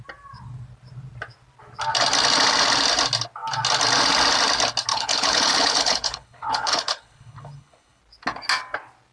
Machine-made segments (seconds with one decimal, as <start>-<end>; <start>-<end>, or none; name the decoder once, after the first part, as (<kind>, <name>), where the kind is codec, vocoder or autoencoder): 4.9-8.0 (codec, HILCodec)